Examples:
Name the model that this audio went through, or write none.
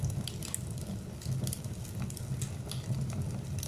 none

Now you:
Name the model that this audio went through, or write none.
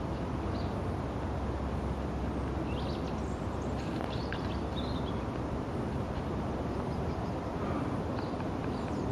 none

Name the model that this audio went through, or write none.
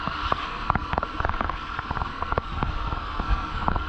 codec, SNAC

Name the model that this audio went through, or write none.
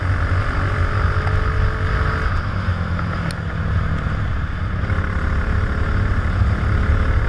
none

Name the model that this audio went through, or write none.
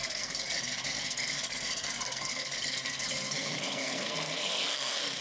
codec, SNAC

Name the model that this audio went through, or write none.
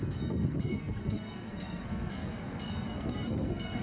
codec, SNAC